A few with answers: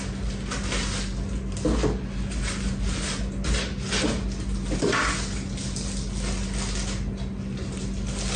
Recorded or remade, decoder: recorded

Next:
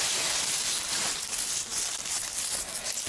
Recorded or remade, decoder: recorded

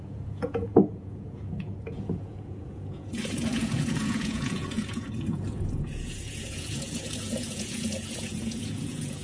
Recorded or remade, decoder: remade, vocoder, Vocos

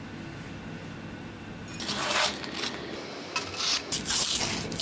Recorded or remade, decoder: recorded